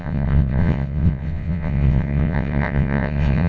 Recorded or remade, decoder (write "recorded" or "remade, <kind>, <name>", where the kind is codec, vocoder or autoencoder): remade, vocoder, WaveNeXt